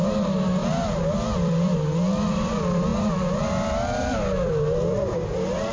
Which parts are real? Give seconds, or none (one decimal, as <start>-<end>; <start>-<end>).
0.0-5.7